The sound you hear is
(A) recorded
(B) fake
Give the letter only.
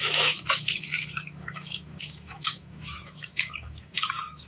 B